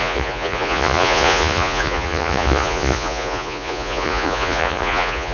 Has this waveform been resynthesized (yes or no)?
yes